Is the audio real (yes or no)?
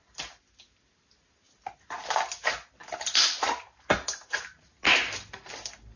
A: yes